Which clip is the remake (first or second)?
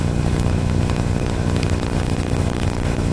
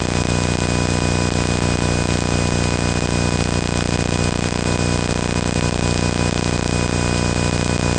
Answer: first